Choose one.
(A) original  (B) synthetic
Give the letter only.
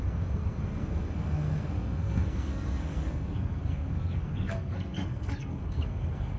B